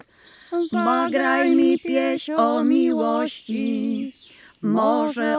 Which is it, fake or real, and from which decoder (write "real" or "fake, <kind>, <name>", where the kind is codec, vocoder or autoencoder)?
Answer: real